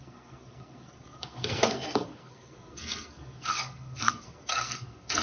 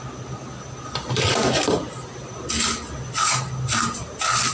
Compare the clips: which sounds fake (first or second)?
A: first